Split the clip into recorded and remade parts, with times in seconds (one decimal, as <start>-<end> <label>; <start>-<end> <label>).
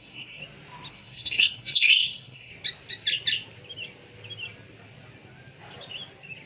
0.0-0.4 remade; 0.4-0.9 recorded; 0.9-2.5 remade; 2.5-6.5 recorded